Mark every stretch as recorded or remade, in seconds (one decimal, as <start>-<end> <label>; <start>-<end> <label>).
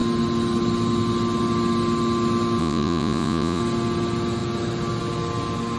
0.0-2.6 recorded; 2.6-3.6 remade; 3.6-5.8 recorded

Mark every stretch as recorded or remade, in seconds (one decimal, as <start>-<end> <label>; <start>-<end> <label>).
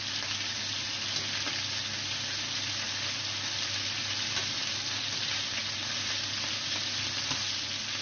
0.0-8.0 recorded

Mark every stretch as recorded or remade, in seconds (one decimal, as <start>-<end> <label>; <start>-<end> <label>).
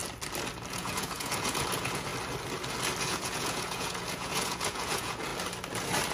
0.0-0.7 recorded; 0.7-2.1 remade; 2.1-3.0 recorded; 3.0-5.3 remade; 5.3-6.1 recorded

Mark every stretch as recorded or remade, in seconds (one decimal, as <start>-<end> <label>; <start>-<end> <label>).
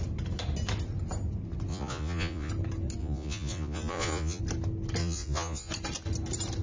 0.0-1.7 recorded; 1.7-2.5 remade; 2.5-3.0 recorded; 3.0-4.4 remade; 4.4-5.0 recorded; 5.0-5.7 remade; 5.7-6.6 recorded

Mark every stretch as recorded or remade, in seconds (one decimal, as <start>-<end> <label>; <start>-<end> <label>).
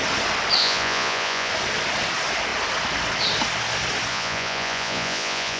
0.0-0.6 recorded; 0.6-1.5 remade; 1.5-4.1 recorded; 4.1-5.6 remade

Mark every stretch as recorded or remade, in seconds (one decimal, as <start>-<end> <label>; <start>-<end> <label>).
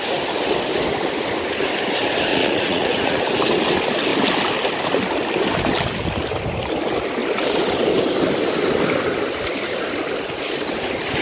0.0-2.3 recorded; 2.3-3.2 remade; 3.2-11.2 recorded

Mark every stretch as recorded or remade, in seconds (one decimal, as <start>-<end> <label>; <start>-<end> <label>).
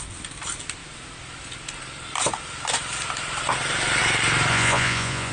0.0-4.5 recorded; 4.5-5.3 remade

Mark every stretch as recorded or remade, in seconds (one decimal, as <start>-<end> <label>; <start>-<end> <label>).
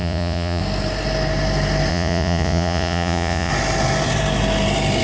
0.0-0.6 remade; 0.6-1.9 recorded; 1.9-3.5 remade; 3.5-5.0 recorded